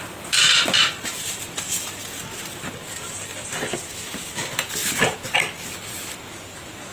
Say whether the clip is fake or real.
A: real